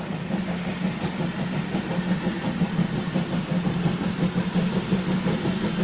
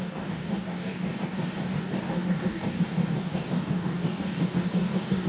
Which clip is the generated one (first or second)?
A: second